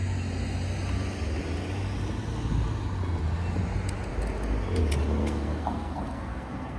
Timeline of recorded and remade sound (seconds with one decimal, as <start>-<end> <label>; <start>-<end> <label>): 0.0-5.2 recorded; 5.2-6.8 remade